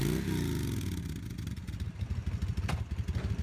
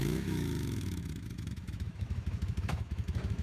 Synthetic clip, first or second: second